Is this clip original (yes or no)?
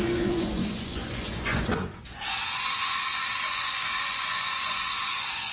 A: no